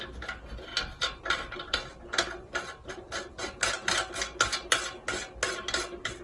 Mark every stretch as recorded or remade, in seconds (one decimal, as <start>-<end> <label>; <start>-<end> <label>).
0.0-6.2 recorded